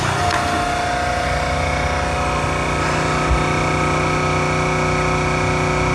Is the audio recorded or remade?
recorded